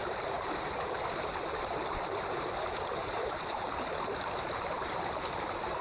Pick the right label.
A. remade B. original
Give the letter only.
A